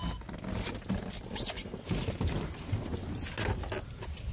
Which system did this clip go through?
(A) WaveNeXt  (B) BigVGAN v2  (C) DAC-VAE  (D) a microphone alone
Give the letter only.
D